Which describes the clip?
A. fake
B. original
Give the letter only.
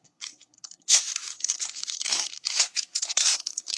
A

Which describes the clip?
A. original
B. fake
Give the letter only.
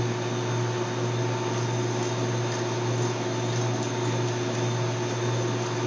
A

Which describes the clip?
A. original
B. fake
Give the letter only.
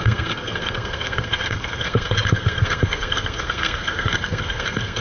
B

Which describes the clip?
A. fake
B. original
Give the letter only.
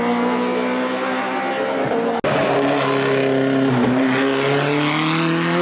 B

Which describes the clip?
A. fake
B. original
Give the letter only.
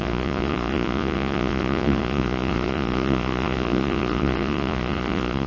A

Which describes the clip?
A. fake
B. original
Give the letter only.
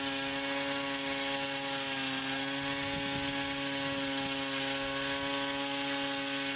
B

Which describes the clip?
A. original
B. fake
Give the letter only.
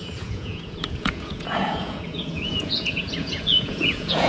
B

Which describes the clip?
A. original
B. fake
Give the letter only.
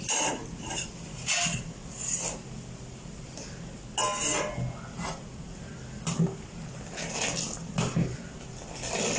A